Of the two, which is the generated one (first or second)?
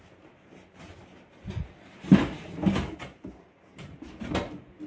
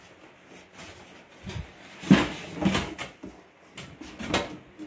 first